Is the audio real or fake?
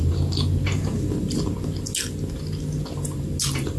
real